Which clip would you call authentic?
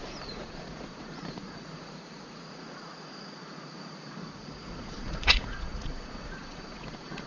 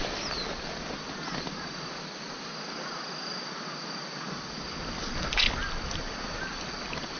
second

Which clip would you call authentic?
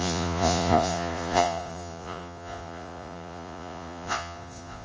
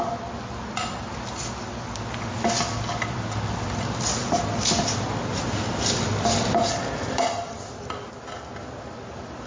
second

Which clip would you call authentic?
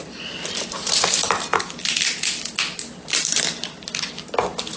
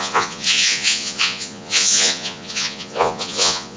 first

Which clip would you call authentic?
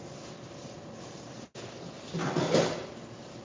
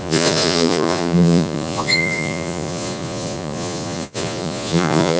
first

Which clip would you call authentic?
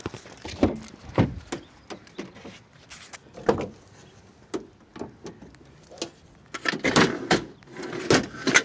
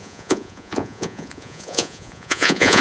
first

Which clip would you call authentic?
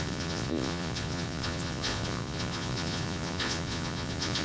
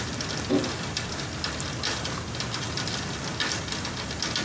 second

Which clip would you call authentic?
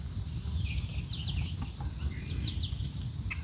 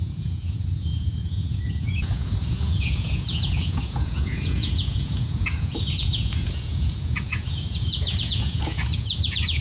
first